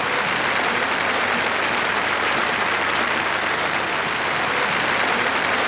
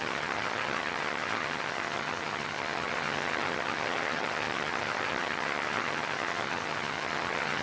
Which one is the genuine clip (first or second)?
first